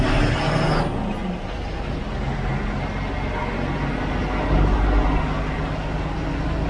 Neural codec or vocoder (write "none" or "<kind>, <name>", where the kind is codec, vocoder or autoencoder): none